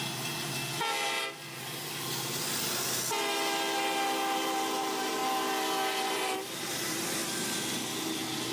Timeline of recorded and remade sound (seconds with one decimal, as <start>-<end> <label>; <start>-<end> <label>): 0.0-0.6 remade; 0.6-4.8 recorded; 4.8-5.2 remade; 5.2-5.9 recorded; 5.9-7.2 remade; 7.2-8.1 recorded; 8.1-8.5 remade